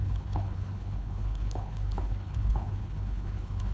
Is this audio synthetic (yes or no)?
yes